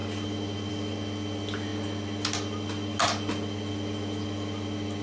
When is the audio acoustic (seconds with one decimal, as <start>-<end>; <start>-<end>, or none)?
0.0-5.0